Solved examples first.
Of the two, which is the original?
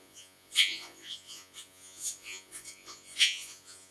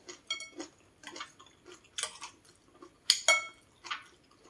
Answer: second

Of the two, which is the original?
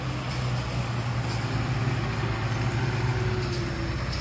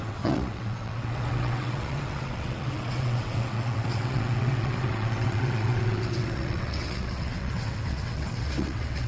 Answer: first